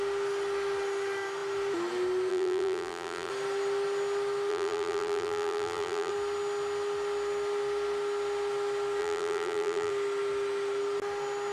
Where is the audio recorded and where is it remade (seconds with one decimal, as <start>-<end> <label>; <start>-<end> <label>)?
0.0-2.3 recorded; 2.3-3.3 remade; 3.3-4.5 recorded; 4.5-6.1 remade; 6.1-9.0 recorded; 9.0-9.9 remade; 9.9-11.5 recorded